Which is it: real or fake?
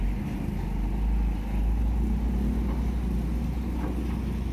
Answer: real